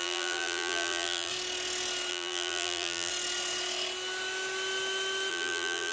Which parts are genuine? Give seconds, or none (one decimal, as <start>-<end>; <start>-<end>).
1.3-2.1; 3.1-5.3